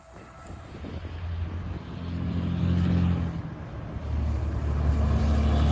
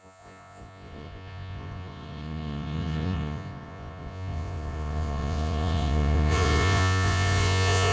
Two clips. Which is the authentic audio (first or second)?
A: first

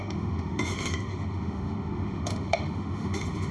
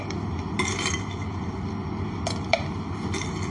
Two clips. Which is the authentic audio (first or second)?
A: second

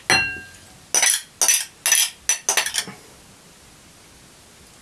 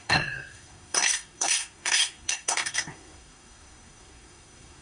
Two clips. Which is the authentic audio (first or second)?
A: first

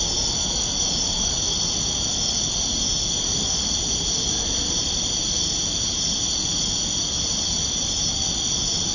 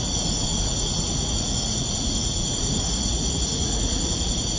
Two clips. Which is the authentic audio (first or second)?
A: first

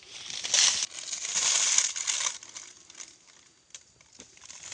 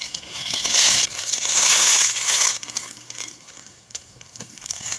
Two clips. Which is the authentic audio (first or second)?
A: first